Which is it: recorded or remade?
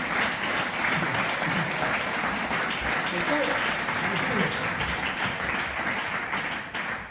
recorded